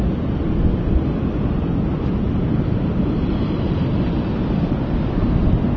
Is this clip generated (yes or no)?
no